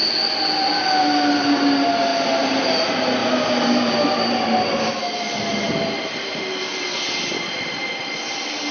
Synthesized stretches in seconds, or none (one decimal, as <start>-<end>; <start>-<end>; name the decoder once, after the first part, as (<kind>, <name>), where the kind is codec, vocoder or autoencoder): 2.1-2.7 (vocoder, BigVGAN v2); 3.2-4.3